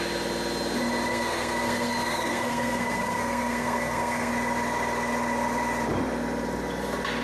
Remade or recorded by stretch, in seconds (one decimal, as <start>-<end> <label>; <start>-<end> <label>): 0.0-1.1 recorded; 1.1-4.3 remade; 4.3-7.2 recorded